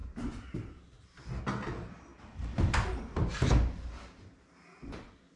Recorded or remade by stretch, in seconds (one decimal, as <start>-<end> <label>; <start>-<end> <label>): 0.0-5.4 recorded